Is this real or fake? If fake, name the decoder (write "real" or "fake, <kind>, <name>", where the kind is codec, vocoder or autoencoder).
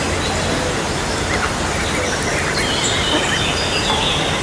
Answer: real